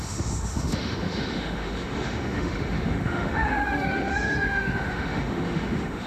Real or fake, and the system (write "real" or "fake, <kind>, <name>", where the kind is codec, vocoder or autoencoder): fake, autoencoder, DAC-VAE